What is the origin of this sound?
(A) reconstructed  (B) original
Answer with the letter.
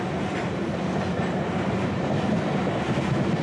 B